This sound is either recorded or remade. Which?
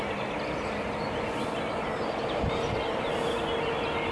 recorded